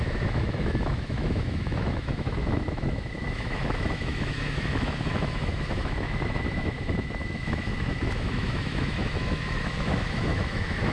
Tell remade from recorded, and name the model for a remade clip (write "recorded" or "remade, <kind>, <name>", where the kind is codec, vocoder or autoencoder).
remade, autoencoder, DAC-VAE